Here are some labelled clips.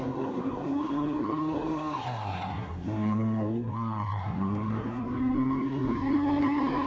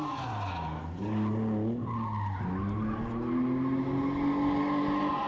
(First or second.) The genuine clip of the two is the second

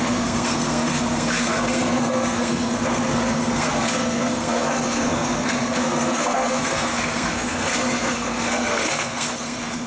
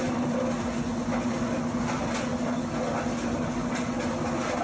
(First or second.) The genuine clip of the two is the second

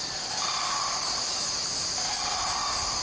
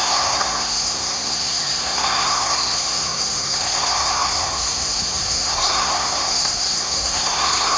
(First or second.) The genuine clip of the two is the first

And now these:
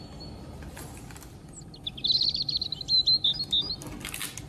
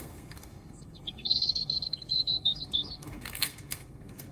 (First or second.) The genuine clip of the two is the first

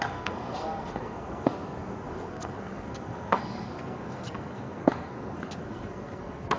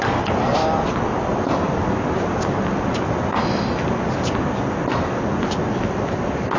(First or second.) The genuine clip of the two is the second